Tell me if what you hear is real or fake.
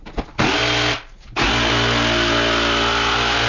real